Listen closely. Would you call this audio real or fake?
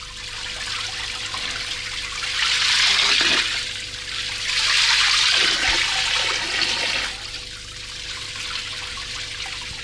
real